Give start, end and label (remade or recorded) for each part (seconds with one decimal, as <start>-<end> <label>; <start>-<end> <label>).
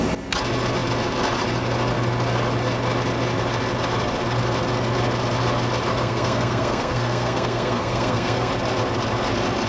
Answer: 0.0-5.9 recorded; 5.9-8.5 remade; 8.5-9.7 recorded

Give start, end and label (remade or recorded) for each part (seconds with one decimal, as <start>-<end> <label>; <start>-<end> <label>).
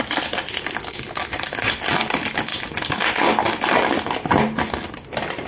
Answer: 0.0-5.5 recorded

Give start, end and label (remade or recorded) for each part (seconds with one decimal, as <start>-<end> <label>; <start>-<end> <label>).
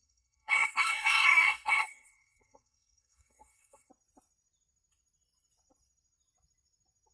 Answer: 0.0-3.9 remade; 3.9-7.1 recorded